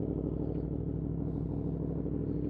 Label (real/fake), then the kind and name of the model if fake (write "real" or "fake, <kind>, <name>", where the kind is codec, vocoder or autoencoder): real